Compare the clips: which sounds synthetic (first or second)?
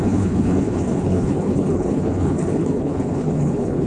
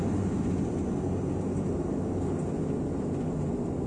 first